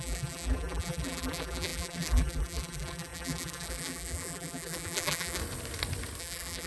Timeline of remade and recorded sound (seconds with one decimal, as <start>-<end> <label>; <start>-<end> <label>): 0.0-5.4 remade; 5.4-6.2 recorded; 6.2-6.7 remade